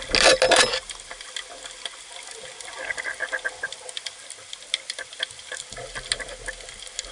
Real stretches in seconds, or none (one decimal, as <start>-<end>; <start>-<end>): 0.0-7.1